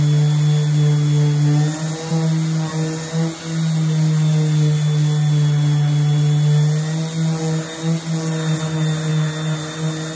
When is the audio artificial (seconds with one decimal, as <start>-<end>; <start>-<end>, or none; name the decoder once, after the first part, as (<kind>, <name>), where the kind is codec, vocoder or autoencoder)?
none